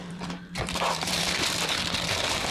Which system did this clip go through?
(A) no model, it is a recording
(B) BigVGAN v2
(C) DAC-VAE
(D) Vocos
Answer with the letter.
B